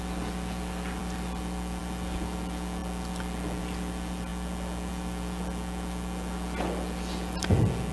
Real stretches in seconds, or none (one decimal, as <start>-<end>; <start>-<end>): 0.0-7.9